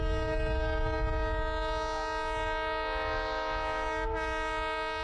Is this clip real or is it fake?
real